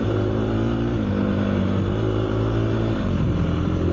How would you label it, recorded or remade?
remade